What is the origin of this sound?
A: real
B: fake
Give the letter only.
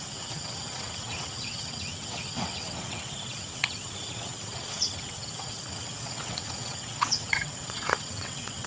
B